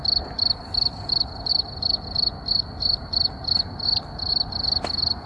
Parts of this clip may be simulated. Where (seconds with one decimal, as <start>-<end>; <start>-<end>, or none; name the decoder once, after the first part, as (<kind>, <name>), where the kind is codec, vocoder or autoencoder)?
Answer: none